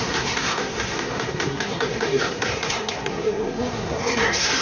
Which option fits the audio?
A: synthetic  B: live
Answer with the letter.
A